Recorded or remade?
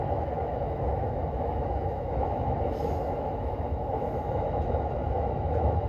remade